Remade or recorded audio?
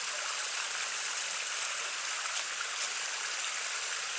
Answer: recorded